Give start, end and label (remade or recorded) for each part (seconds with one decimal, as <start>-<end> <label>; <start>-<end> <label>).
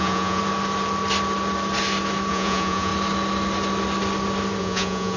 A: 0.0-0.4 remade; 0.4-2.3 recorded; 2.3-2.9 remade; 2.9-4.6 recorded; 4.6-5.2 remade